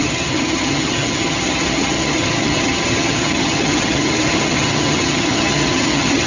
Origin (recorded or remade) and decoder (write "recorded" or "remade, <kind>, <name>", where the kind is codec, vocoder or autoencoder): remade, vocoder, HiFi-GAN